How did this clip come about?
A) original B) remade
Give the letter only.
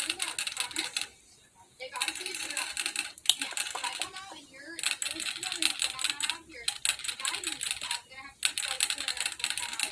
A